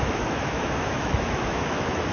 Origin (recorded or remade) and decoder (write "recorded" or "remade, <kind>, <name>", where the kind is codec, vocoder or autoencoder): remade, autoencoder, DAC-VAE